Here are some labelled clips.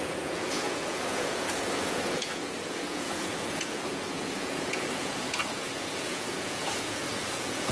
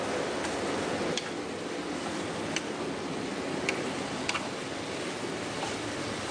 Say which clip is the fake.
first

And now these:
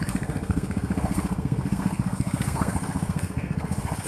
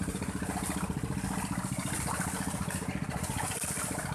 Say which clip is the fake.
first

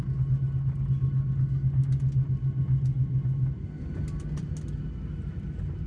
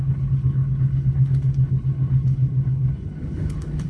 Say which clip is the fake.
second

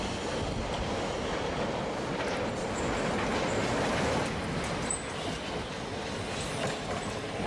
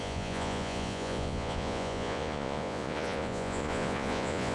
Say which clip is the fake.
second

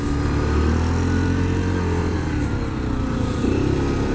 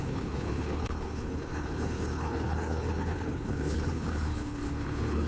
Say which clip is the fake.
second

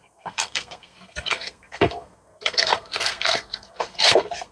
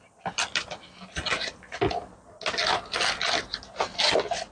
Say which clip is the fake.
first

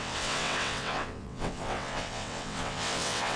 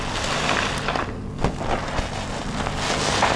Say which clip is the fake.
first